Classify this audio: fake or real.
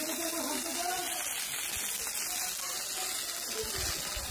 real